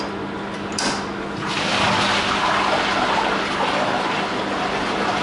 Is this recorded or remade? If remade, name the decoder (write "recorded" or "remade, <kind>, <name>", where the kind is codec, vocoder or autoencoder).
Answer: recorded